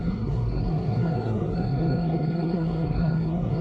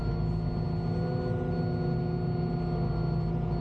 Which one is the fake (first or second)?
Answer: first